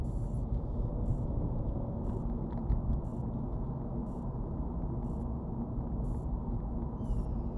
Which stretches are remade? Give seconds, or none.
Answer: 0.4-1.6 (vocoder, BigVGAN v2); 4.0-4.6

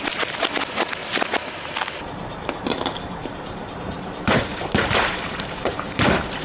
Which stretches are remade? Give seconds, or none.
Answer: 0.0-1.0 (vocoder, BigVGAN v2); 1.5-6.4

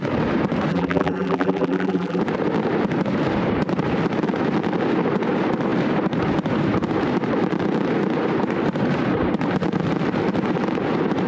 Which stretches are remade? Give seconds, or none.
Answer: 0.7-2.2 (vocoder, BigVGAN v2)